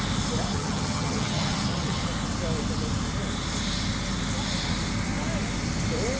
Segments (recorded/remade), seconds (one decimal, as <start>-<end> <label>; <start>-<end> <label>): 0.0-0.5 recorded; 0.5-2.0 remade; 2.0-6.2 recorded